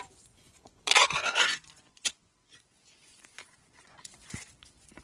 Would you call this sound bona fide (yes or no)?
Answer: no